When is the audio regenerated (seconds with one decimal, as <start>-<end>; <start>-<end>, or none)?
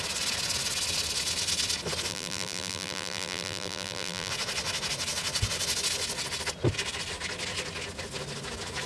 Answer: 2.1-4.3